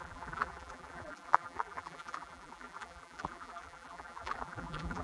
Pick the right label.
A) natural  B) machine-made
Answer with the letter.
B